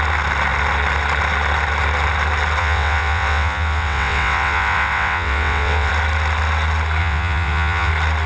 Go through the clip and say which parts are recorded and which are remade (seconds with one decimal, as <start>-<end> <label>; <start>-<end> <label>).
0.0-2.6 recorded; 2.6-5.9 remade; 5.9-7.0 recorded; 7.0-7.9 remade; 7.9-8.3 recorded